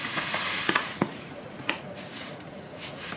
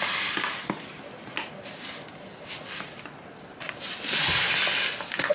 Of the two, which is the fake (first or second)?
first